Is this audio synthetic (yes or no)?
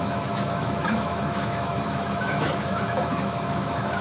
yes